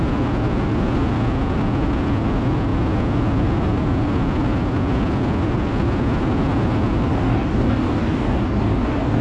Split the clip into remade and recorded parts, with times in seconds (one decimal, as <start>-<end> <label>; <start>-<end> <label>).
0.0-7.1 recorded; 7.1-9.2 remade